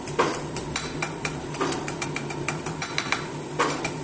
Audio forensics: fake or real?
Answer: real